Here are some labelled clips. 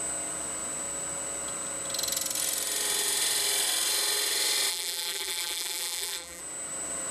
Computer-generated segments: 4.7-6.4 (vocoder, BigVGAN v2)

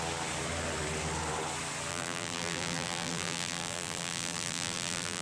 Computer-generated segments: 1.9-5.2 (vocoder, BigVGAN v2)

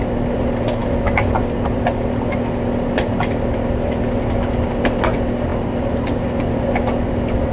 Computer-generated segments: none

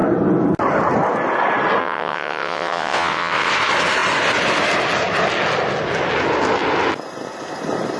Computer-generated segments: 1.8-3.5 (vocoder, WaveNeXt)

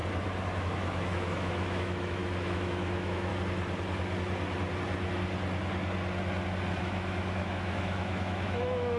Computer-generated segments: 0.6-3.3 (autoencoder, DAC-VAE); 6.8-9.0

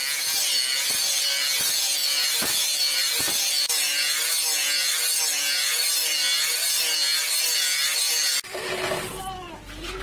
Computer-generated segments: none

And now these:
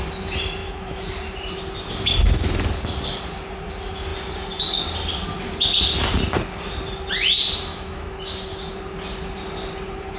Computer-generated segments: 0.6-1.1 (autoencoder, DAC-VAE); 7.7-8.2

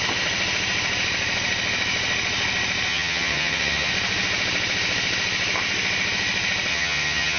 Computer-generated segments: 2.9-3.9 (vocoder, HiFi-GAN); 6.7-7.4